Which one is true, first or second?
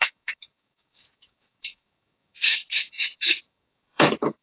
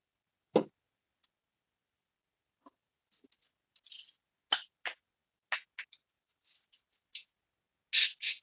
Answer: second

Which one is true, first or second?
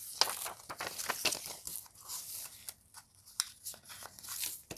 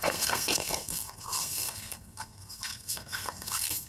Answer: first